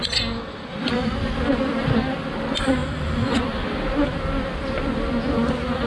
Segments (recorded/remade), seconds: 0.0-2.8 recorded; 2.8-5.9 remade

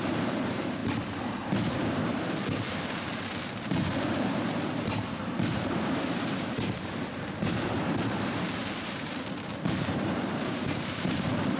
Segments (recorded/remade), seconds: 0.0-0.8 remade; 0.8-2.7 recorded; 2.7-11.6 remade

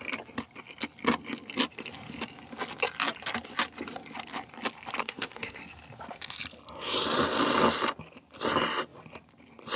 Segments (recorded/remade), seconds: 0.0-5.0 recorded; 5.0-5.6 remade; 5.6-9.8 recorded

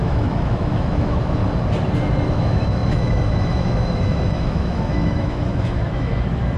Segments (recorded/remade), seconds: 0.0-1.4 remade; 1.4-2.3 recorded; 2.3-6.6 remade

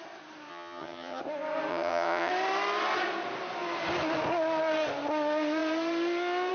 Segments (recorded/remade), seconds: 0.0-0.5 recorded; 0.5-1.2 remade; 1.2-1.7 recorded; 1.7-2.3 remade; 2.3-6.5 recorded

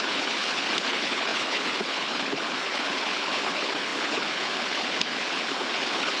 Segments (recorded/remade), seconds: 0.0-6.2 remade

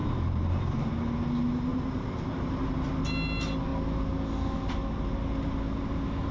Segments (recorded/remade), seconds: 0.0-0.9 remade; 0.9-1.7 recorded; 1.7-2.9 remade; 2.9-6.3 recorded

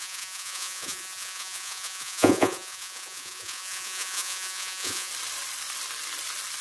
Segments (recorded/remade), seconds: 0.0-5.1 remade; 5.1-6.6 recorded